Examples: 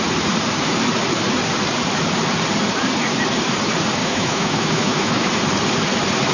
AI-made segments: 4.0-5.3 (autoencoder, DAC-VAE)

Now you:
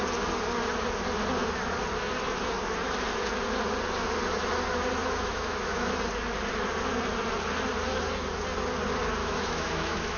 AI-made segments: 5.0-5.9 (autoencoder, DAC-VAE); 9.2-10.2

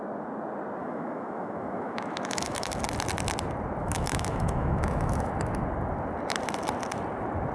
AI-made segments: 0.8-2.8 (autoencoder, DAC-VAE); 3.8-5.3

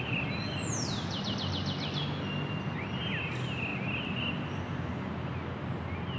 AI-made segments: none

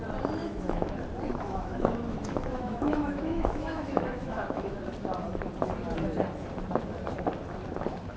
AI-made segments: 0.4-0.9 (autoencoder, DAC-VAE); 1.3-4.8